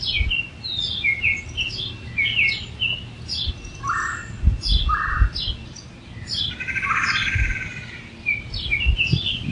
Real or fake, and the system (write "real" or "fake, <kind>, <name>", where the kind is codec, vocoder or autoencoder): real